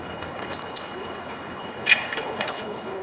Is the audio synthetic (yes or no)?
yes